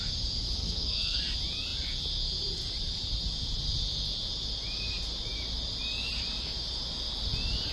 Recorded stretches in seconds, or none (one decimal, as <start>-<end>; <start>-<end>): 0.0-0.6; 1.2-7.7